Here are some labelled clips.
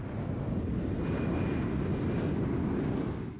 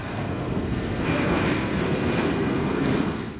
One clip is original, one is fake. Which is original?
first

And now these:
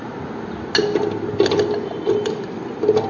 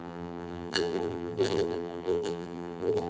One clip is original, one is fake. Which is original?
first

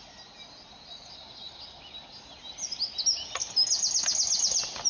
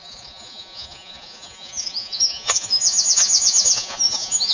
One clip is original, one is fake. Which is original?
first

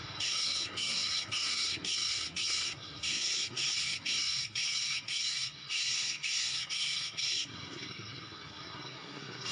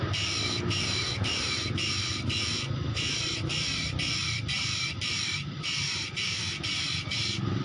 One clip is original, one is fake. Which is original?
second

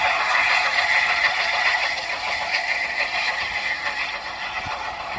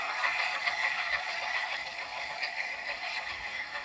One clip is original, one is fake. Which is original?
first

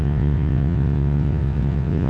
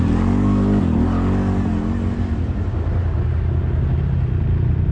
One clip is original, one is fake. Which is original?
second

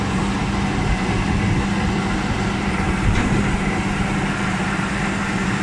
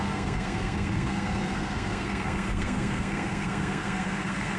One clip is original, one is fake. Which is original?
first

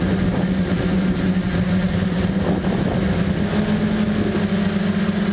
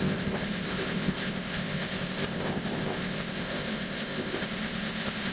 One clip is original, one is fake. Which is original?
first